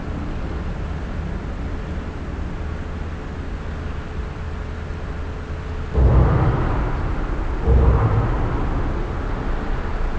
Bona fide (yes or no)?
yes